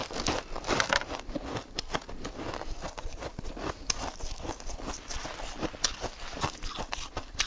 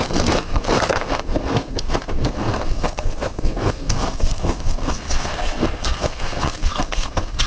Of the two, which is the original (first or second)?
first